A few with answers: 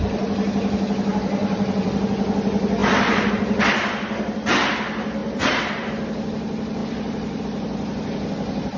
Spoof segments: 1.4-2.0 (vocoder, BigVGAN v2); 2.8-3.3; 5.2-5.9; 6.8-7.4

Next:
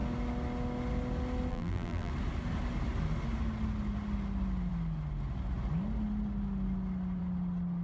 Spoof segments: 1.5-2.1 (vocoder, BigVGAN v2)

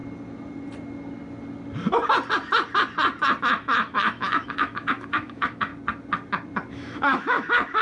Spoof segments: 3.4-5.7 (autoencoder, DAC-VAE); 6.7-7.8